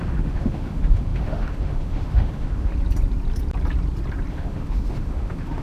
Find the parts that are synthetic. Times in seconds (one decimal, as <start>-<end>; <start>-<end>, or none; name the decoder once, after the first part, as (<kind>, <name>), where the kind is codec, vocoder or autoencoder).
0.0-2.7 (autoencoder, DAC-VAE); 4.3-5.6